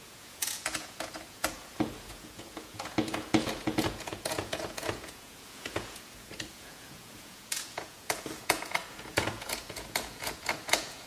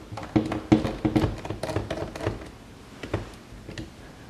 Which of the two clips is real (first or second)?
second